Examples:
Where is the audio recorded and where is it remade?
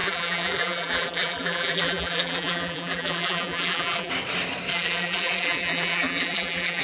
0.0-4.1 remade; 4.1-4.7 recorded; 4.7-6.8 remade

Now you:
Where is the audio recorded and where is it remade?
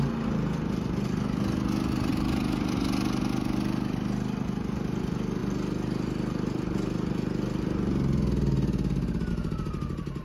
0.0-10.2 recorded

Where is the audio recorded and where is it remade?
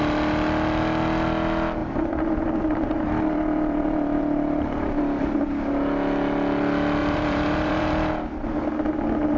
0.0-1.8 recorded; 1.8-5.0 remade; 5.0-7.0 recorded; 7.0-8.1 remade; 8.1-9.4 recorded